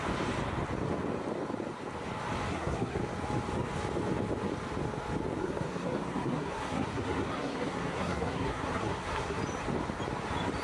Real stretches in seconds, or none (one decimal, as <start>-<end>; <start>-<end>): 0.0-2.5; 3.0-5.4; 9.4-10.6